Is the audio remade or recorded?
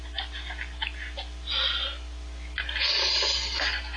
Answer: recorded